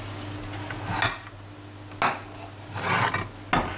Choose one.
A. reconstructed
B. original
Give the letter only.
B